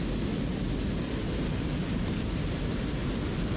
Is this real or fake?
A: real